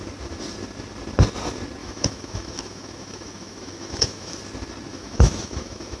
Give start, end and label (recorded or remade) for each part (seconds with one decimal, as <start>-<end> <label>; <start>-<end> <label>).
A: 0.0-1.8 recorded; 1.8-4.4 remade; 4.4-4.9 recorded; 4.9-6.0 remade